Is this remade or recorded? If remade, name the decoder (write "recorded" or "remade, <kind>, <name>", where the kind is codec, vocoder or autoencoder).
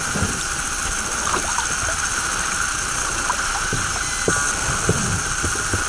recorded